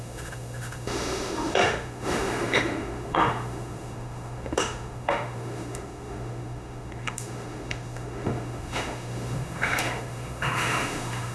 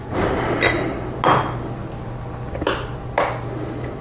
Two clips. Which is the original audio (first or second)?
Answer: second